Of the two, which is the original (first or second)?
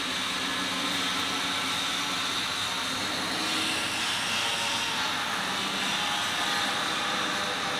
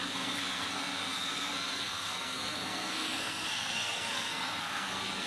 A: first